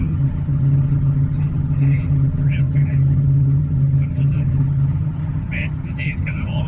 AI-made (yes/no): yes